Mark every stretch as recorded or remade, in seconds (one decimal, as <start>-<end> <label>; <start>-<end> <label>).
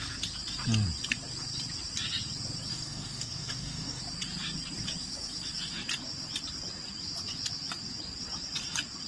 0.0-2.7 recorded; 2.7-4.0 remade; 4.0-9.1 recorded